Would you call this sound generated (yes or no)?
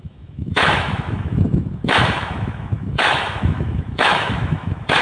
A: yes